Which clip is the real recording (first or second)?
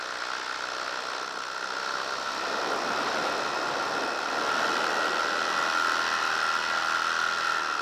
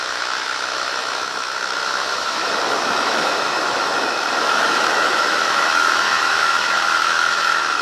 first